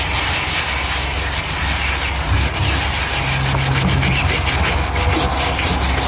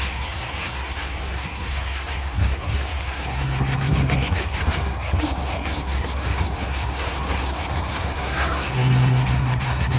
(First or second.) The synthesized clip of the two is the second